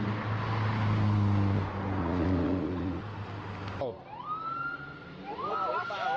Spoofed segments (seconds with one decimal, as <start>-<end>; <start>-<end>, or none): 2.0-3.0